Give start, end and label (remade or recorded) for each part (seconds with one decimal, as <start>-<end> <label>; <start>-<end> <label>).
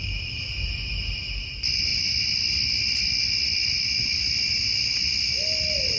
0.0-6.0 recorded